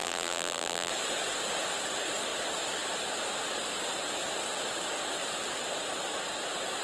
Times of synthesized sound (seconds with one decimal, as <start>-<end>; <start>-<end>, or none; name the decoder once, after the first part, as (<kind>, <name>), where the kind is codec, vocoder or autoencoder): 0.0-0.9 (vocoder, BigVGAN v2)